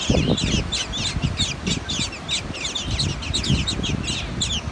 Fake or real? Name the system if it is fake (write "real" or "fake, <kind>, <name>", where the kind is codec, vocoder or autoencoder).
real